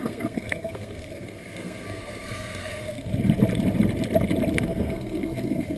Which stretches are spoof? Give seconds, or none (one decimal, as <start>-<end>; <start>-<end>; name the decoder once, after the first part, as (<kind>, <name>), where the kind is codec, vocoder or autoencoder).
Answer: 0.0-3.1 (codec, SNAC); 4.6-5.8